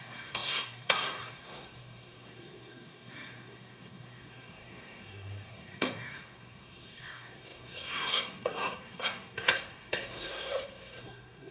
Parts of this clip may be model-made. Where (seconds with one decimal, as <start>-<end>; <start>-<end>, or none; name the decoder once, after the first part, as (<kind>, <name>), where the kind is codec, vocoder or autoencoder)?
0.0-11.5 (codec, SNAC)